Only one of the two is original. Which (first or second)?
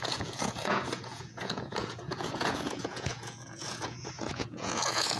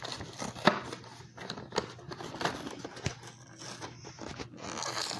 second